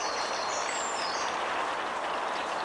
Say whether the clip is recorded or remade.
remade